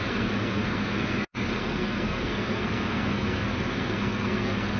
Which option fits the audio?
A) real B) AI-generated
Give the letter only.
B